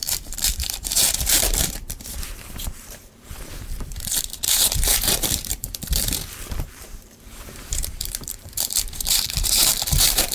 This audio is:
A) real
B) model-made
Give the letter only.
B